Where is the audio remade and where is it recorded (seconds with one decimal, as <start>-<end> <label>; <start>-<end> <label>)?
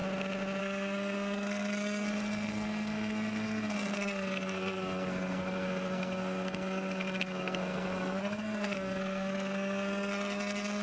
0.0-0.6 recorded; 0.6-10.8 remade